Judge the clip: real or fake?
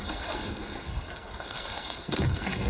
fake